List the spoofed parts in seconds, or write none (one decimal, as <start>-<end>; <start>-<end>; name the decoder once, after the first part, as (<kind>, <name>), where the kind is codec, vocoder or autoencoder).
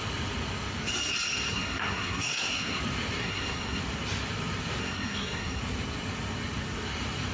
1.5-2.8 (codec, SNAC); 3.2-3.8; 4.8-5.6